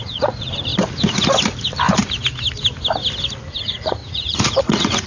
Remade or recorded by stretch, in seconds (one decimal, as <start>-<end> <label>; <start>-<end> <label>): 0.0-0.7 remade; 0.7-3.6 recorded; 3.6-5.1 remade

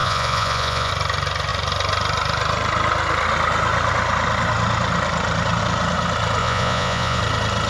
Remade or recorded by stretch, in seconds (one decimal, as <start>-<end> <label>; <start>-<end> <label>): 0.0-0.9 remade; 0.9-6.4 recorded; 6.4-7.2 remade; 7.2-7.7 recorded